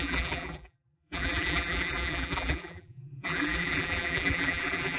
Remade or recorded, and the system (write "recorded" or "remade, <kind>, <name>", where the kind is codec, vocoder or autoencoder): remade, vocoder, BigVGAN v2